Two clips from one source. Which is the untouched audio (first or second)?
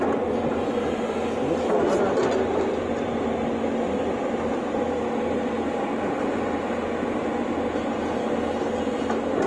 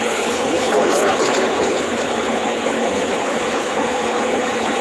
first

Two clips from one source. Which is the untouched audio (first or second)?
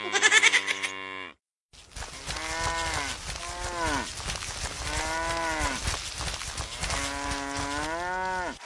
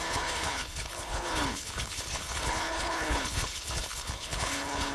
first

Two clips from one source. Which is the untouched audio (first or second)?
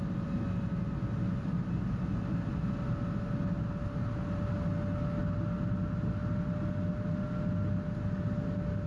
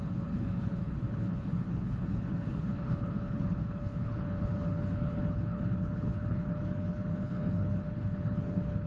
first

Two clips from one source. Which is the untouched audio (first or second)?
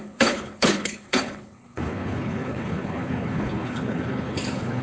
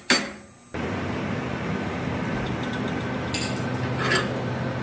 second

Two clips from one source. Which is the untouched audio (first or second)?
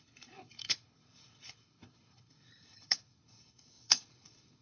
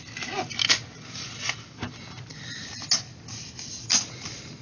second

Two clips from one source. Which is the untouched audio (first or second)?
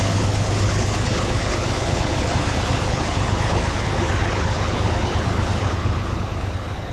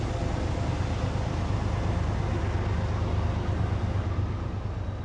second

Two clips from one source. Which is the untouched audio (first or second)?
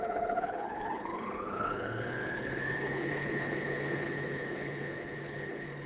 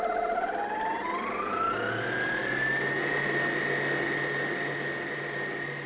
second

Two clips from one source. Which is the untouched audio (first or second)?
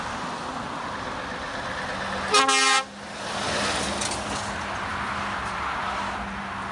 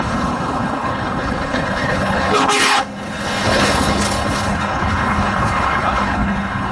first